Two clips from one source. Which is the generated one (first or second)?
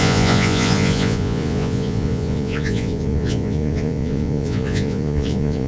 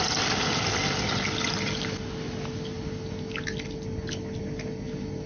first